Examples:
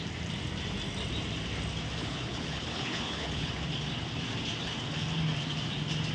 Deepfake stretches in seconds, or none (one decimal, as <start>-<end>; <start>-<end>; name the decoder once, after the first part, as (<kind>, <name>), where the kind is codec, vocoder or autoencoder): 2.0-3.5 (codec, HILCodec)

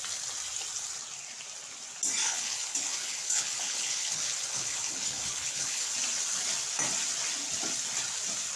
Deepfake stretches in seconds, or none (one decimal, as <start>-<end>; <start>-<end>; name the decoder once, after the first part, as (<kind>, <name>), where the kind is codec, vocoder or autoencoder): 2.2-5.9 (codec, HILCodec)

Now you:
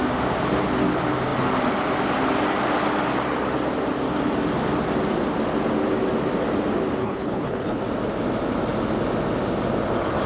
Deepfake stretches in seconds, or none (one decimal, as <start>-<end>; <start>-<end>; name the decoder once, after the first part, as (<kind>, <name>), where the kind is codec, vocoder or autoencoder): 7.0-7.8 (codec, HILCodec)

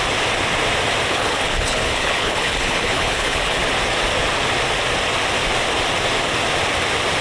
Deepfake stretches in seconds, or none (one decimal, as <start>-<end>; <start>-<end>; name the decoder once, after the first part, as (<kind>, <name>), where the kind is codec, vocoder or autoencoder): 1.1-3.6 (codec, HILCodec)